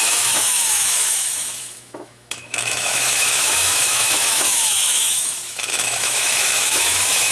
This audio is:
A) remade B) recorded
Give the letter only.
A